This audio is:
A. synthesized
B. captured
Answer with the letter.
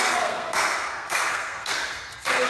A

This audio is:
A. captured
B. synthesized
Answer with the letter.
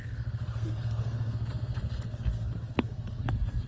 B